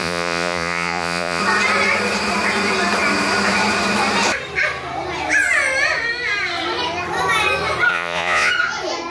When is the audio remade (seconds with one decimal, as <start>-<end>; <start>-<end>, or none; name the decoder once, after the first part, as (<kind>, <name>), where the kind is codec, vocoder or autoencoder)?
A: 0.0-1.4 (vocoder, Vocos); 7.9-8.5